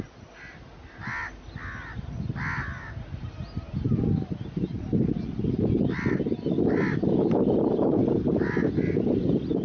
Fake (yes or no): no